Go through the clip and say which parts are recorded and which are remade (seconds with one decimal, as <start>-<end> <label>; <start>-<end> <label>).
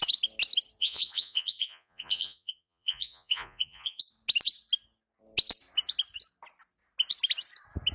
0.0-0.8 recorded; 0.8-4.0 remade; 4.0-7.9 recorded